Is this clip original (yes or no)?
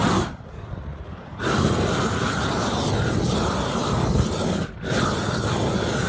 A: yes